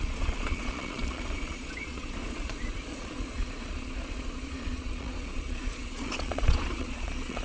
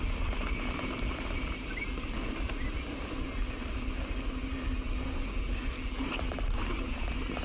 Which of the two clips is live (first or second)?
second